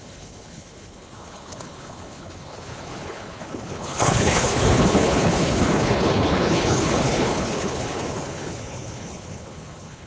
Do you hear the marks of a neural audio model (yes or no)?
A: yes